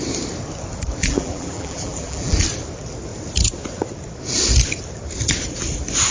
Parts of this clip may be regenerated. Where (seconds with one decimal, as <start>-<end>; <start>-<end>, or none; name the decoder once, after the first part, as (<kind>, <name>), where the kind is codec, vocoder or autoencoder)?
1.0-2.4 (vocoder, BigVGAN v2)